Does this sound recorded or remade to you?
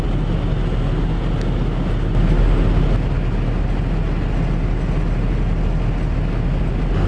recorded